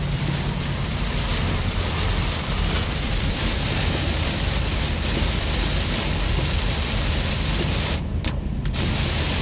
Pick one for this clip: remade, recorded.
remade